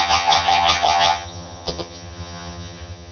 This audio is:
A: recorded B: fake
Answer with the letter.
B